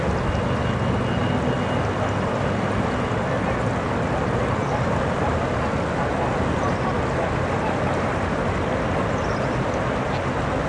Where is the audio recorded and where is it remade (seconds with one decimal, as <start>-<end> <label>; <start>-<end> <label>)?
0.0-10.7 recorded